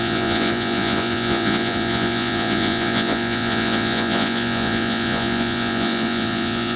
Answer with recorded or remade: remade